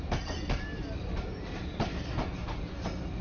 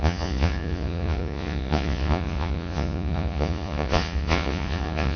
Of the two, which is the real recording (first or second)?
first